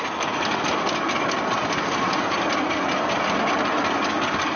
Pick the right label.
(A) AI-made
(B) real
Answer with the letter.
B